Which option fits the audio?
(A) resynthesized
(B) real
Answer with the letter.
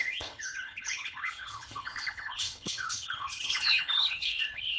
A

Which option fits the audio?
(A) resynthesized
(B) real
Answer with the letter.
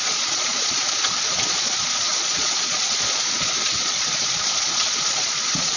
A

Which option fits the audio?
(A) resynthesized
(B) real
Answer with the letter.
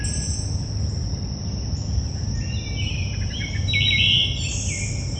B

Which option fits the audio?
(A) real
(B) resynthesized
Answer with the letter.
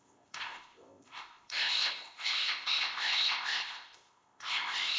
B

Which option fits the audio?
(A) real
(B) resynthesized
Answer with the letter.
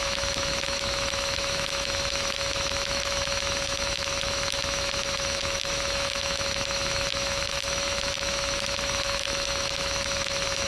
B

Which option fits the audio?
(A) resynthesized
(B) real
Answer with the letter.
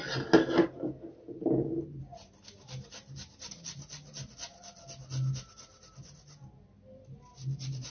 B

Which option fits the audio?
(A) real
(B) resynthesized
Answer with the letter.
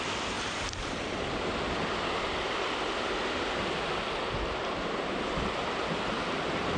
A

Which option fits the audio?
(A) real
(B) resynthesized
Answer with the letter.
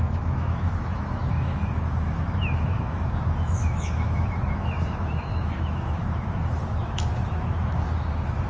B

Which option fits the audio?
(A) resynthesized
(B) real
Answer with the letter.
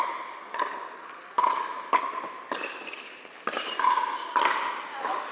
B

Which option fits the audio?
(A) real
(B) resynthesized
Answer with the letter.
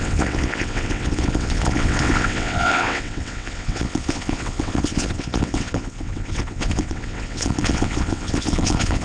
B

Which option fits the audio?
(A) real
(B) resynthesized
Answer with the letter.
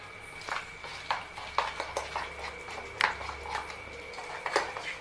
A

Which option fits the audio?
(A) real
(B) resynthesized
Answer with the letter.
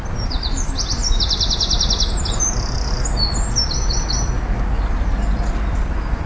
A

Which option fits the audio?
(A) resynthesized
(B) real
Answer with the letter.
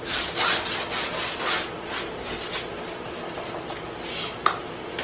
B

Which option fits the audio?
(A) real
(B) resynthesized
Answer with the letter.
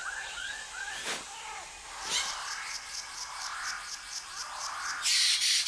A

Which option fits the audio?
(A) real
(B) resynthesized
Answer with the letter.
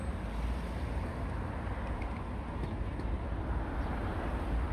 A